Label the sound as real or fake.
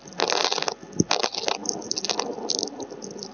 real